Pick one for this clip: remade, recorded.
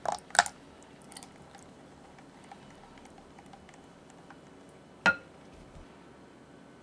recorded